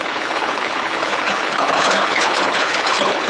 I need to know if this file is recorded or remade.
remade